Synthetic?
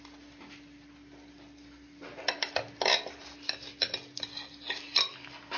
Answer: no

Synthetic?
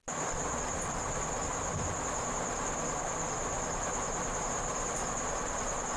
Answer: no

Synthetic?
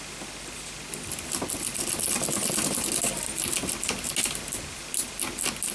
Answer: no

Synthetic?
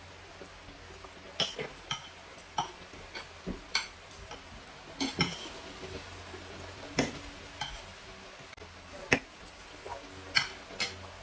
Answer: no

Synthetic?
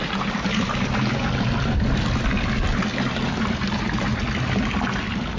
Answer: no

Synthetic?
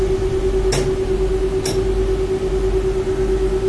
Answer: no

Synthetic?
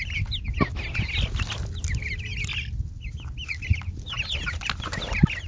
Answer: no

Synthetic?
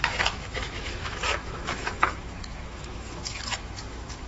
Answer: yes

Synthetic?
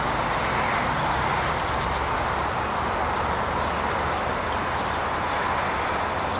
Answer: no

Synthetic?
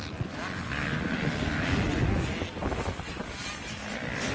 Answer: no